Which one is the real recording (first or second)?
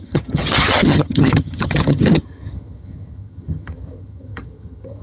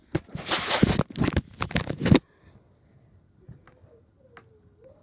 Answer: second